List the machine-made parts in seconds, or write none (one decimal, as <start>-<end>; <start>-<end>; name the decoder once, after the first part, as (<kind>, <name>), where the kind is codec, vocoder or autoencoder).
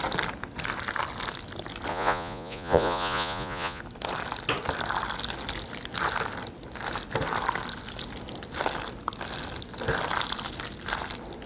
1.9-3.8 (vocoder, Vocos)